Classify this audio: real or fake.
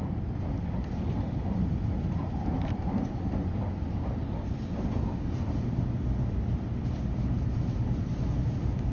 real